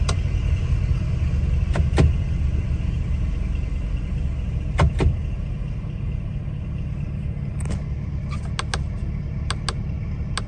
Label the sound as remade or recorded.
recorded